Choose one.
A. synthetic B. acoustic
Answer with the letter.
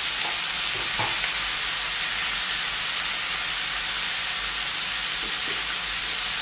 B